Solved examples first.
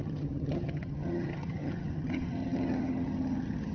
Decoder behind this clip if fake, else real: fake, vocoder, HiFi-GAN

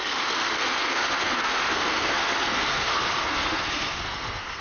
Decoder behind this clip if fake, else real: fake, codec, SNAC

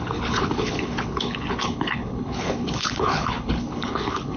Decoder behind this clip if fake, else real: fake, codec, HILCodec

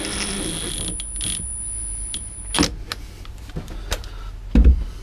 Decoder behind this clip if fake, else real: real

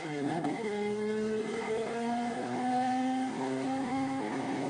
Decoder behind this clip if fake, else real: fake, codec, SNAC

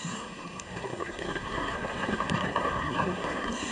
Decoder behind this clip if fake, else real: fake, codec, SNAC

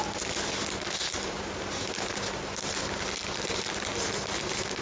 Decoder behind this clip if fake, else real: real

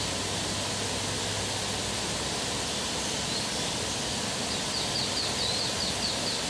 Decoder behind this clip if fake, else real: real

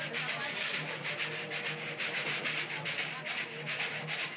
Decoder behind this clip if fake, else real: real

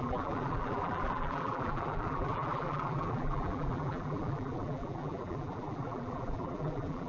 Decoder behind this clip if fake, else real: fake, vocoder, BigVGAN v2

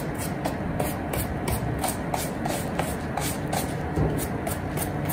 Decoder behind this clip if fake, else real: real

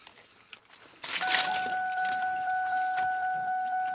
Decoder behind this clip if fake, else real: real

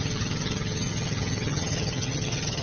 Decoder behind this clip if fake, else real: fake, vocoder, HiFi-GAN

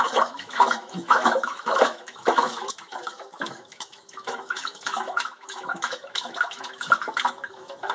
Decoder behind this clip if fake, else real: fake, autoencoder, DAC-VAE